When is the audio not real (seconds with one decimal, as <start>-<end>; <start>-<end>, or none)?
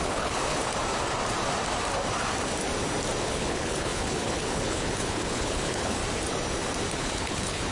0.0-0.7; 3.2-6.0; 7.0-7.7